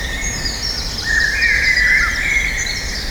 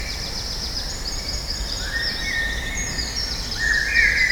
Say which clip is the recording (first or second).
second